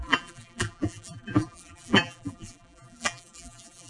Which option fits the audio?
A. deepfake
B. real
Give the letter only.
A